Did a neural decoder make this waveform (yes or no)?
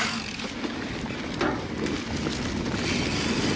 no